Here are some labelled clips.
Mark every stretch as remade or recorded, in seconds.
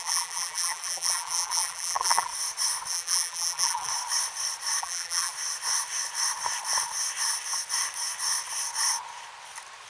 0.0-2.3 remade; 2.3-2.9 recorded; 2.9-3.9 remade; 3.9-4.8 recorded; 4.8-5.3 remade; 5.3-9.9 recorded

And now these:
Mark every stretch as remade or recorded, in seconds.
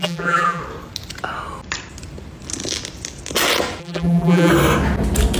0.0-0.6 remade; 0.6-3.8 recorded; 3.8-4.5 remade; 4.5-5.4 recorded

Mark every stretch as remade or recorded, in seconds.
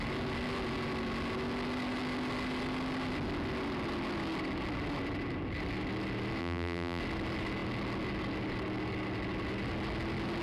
0.0-6.4 recorded; 6.4-7.0 remade; 7.0-10.4 recorded